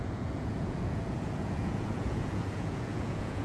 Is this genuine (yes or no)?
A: no